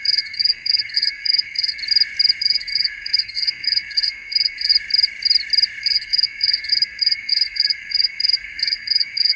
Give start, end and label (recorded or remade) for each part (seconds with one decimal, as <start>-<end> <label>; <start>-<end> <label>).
0.0-1.8 remade; 1.8-2.4 recorded; 2.4-4.7 remade; 4.7-5.8 recorded; 5.8-9.4 remade